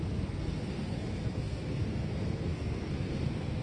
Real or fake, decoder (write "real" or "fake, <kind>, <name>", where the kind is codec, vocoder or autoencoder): fake, codec, SNAC